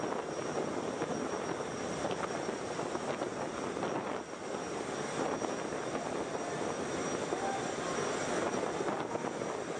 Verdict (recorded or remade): recorded